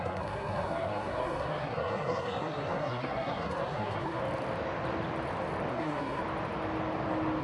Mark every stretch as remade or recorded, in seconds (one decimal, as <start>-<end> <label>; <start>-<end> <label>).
0.0-4.2 remade; 4.2-5.7 recorded; 5.7-6.2 remade; 6.2-7.4 recorded